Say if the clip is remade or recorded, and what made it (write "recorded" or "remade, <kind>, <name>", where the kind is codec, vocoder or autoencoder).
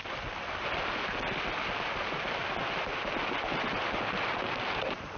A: recorded